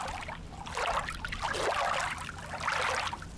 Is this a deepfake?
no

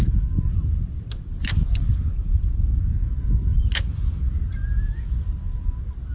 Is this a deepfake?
no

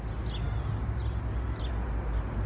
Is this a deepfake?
no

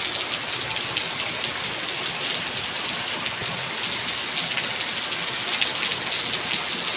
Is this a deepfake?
no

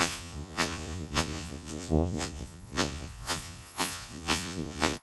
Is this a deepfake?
yes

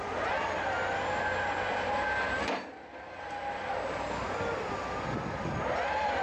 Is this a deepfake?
no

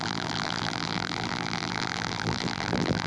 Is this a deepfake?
yes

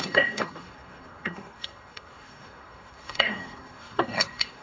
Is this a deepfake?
yes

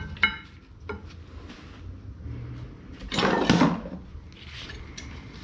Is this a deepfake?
no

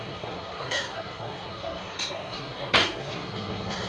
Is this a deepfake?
yes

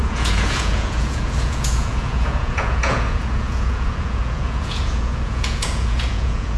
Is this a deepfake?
yes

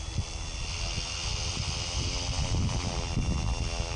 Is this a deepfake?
no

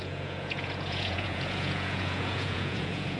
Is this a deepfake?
yes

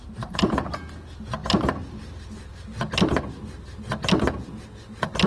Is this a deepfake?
no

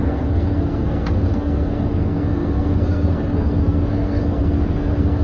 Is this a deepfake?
yes